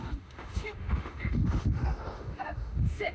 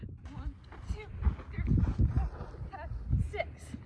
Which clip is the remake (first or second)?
first